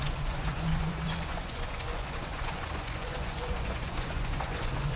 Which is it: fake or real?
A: fake